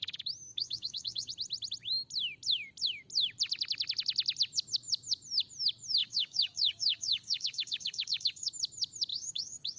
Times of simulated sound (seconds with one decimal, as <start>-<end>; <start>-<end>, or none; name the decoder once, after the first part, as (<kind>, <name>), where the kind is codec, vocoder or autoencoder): 0.5-1.3 (codec, DAC); 6.0-8.5; 9.1-9.8